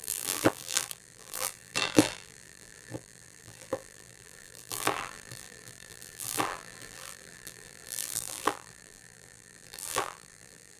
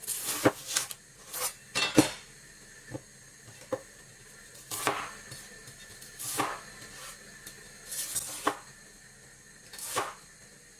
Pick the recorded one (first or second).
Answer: second